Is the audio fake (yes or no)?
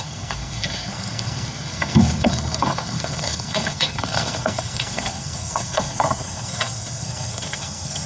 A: yes